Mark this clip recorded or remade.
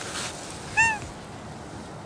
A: recorded